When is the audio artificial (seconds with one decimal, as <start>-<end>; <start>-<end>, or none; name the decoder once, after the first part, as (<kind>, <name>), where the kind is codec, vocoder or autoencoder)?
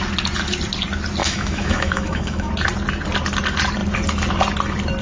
1.2-2.5 (autoencoder, DAC-VAE)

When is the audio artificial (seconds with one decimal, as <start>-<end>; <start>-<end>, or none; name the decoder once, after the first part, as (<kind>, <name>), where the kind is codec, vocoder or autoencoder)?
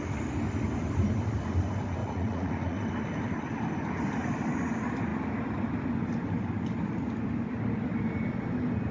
2.0-2.8 (vocoder, Vocos)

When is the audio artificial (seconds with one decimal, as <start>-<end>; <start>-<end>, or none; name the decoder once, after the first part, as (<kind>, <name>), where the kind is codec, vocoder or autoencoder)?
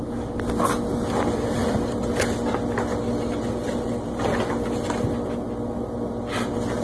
none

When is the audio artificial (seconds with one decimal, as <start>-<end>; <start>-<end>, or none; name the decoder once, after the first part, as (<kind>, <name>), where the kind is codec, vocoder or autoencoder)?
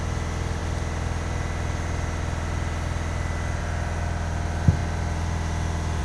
none